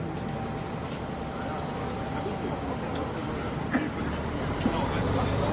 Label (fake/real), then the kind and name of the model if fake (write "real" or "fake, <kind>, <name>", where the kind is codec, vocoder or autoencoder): real